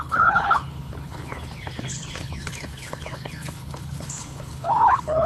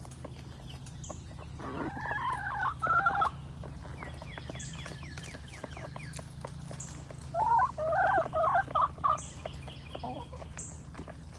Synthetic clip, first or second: first